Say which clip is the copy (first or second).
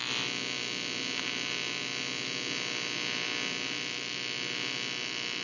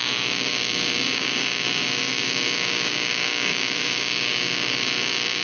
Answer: second